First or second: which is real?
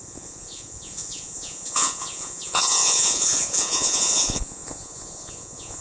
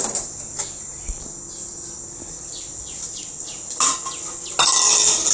second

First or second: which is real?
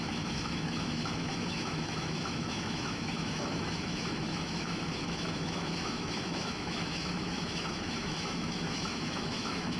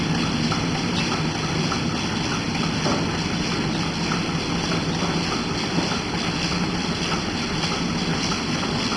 second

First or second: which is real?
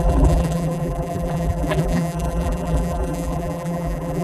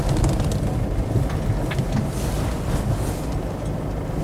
second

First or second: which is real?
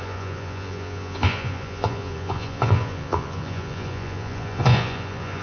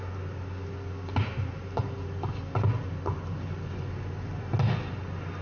second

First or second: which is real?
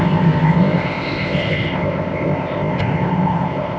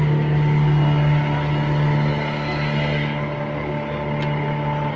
second